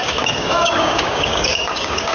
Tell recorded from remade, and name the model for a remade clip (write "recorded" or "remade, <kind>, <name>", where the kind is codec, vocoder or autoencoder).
remade, codec, DAC